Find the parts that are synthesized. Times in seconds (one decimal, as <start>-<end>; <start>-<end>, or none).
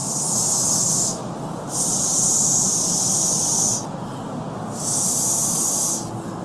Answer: 0.0-0.6; 1.2-3.1